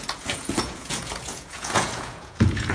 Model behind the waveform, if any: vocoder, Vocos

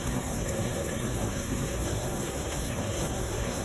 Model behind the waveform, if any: codec, SNAC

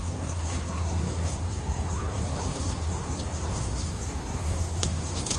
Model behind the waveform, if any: codec, SNAC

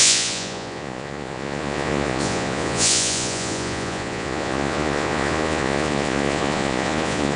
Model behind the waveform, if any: vocoder, Vocos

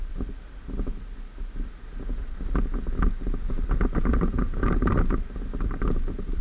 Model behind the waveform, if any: none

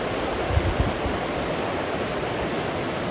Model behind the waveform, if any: none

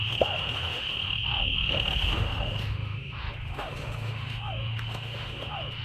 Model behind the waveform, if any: autoencoder, DAC-VAE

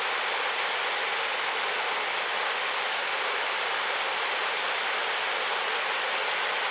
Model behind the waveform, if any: none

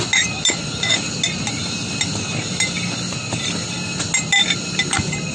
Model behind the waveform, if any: none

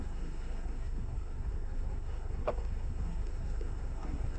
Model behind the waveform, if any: codec, SNAC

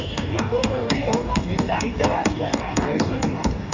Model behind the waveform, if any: codec, DAC